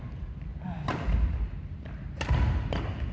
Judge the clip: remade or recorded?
recorded